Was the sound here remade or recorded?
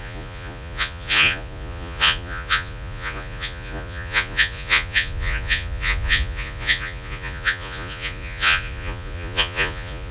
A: remade